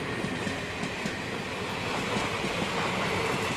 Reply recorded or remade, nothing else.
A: recorded